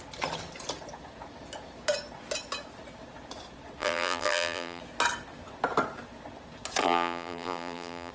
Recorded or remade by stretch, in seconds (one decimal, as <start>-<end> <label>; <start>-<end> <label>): 0.0-3.8 recorded; 3.8-4.8 remade; 4.8-6.8 recorded; 6.8-8.1 remade